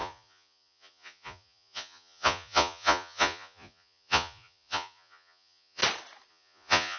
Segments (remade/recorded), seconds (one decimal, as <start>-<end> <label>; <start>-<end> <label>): 0.0-5.8 remade; 5.8-6.3 recorded; 6.3-7.0 remade